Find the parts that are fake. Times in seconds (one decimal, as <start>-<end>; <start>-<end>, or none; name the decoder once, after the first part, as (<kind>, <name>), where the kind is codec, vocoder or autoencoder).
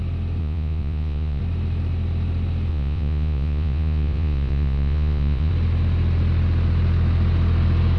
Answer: 0.4-1.4 (vocoder, Vocos); 2.7-5.5